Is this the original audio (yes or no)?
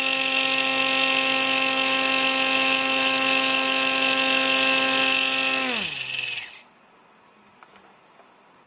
yes